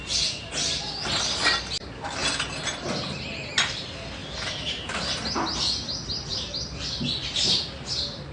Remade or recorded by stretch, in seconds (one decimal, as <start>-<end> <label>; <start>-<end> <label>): 0.0-4.2 recorded; 4.2-5.2 remade; 5.2-8.3 recorded